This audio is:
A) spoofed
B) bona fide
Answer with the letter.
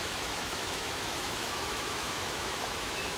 A